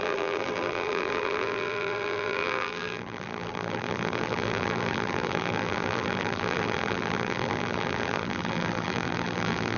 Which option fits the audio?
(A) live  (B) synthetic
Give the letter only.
B